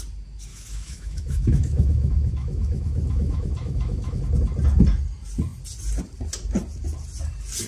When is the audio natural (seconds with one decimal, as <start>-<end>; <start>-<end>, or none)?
0.0-0.5; 4.2-7.7